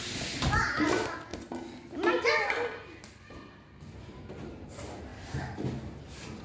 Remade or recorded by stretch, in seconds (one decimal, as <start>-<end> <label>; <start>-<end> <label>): 0.0-6.4 recorded